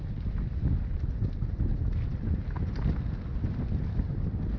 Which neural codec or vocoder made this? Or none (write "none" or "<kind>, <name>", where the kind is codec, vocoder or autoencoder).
none